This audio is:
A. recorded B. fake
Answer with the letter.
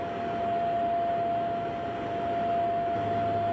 A